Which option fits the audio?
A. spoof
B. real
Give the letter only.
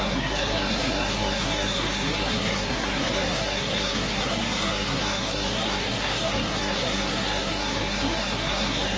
A